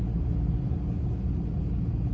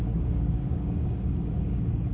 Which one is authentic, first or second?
first